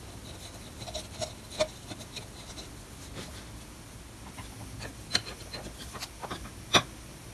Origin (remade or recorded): recorded